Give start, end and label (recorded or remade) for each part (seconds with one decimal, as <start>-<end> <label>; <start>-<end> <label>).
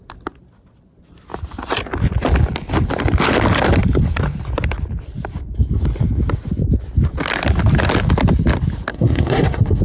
0.0-8.9 recorded; 8.9-9.8 remade